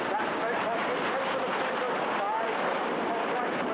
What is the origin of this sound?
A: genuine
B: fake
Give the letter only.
A